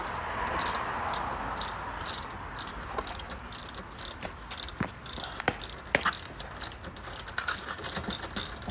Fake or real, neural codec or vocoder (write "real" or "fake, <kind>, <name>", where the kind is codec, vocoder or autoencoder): real